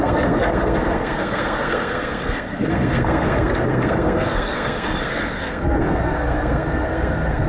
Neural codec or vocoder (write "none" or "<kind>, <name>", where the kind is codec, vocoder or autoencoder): codec, SNAC